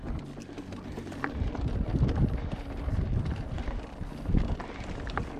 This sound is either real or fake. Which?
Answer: real